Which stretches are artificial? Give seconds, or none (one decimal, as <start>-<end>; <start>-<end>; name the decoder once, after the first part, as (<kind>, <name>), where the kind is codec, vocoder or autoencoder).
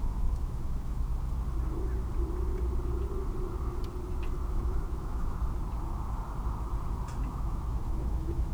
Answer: 0.0-1.1 (autoencoder, DAC-VAE); 4.5-5.4; 7.3-8.5